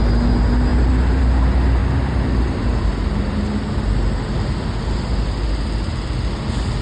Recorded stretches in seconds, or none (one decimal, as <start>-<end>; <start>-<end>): 0.0-0.7; 1.3-1.8; 3.4-6.8